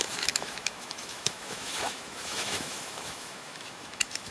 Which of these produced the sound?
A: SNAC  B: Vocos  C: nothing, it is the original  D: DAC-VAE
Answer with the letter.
D